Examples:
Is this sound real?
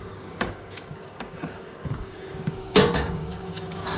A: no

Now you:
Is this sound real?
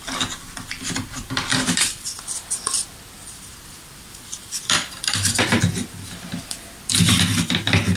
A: no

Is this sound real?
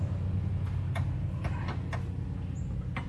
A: yes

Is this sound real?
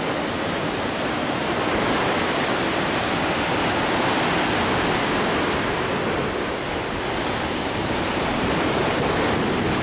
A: yes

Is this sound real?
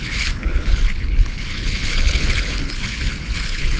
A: no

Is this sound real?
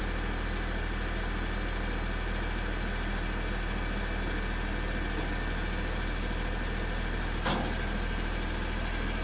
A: yes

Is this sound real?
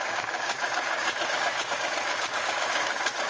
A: no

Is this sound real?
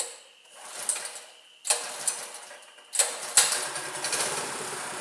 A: yes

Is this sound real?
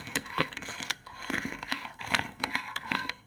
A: no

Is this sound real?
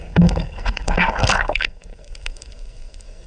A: no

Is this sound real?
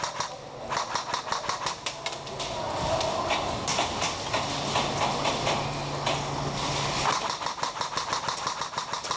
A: yes